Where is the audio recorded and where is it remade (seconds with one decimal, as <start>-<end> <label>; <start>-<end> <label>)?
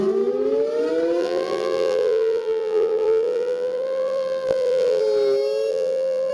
0.0-1.2 recorded; 1.2-5.0 remade; 5.0-5.7 recorded; 5.7-6.3 remade